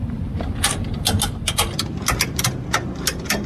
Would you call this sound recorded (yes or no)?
yes